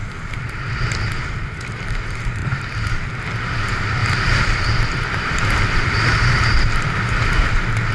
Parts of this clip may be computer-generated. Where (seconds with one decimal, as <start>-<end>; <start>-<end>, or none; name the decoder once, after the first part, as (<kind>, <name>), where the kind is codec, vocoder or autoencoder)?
2.4-3.1 (vocoder, BigVGAN v2); 4.0-6.9